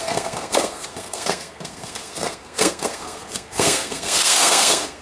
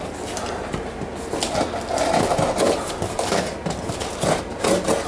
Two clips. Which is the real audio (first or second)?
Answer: second